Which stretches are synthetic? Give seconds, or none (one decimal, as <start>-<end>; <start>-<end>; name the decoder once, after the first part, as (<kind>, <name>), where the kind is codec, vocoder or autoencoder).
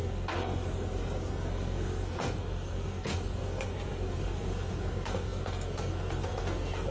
0.0-6.9 (codec, SNAC)